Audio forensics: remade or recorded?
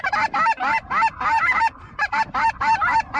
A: recorded